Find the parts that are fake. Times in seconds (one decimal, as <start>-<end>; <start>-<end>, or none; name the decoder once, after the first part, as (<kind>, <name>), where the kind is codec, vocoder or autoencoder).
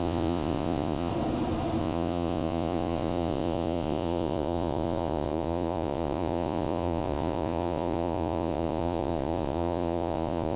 0.0-1.1 (vocoder, Vocos); 1.8-10.6